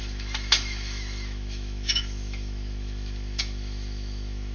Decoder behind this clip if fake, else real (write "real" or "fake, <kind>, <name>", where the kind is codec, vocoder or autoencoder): fake, autoencoder, DAC-VAE